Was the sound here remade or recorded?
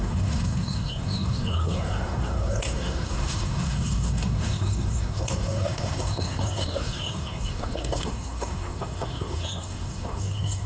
remade